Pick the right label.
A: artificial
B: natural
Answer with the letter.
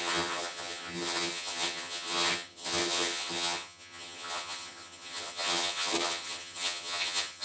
A